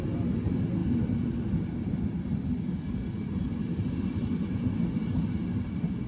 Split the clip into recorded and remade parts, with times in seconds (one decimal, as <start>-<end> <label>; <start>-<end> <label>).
0.0-0.8 recorded; 0.8-2.4 remade; 2.4-6.1 recorded